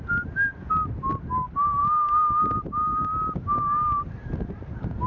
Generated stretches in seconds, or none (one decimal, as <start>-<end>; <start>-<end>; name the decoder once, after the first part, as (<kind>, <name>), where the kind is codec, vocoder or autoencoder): none